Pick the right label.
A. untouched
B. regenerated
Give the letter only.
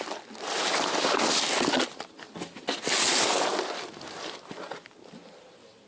A